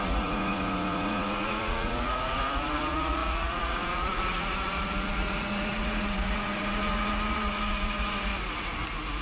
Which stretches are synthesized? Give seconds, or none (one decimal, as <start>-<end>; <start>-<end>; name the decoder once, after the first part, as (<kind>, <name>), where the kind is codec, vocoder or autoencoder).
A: 0.0-8.3 (vocoder, Vocos)